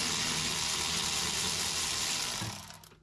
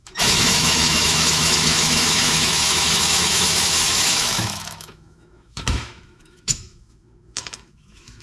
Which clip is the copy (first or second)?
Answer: second